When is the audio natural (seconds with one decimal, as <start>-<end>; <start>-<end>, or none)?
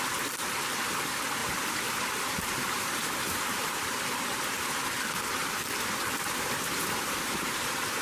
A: 0.0-1.4; 4.7-5.4